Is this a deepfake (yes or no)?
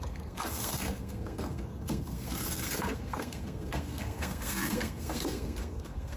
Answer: yes